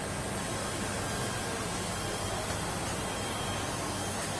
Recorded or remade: recorded